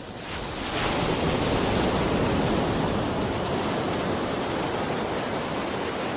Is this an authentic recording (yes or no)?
yes